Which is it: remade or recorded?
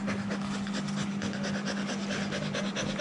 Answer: recorded